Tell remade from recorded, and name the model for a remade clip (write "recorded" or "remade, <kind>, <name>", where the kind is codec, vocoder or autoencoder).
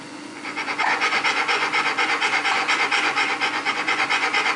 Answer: remade, vocoder, Vocos